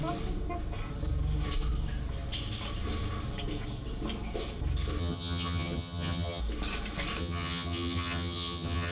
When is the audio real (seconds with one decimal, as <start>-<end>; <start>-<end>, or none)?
0.0-5.0; 6.4-7.2